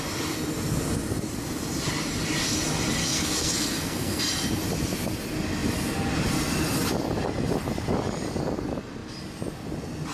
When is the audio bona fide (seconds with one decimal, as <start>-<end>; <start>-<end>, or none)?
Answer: 0.0-3.0; 4.2-10.1